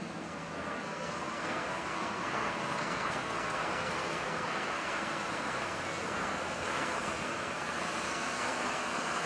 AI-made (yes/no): yes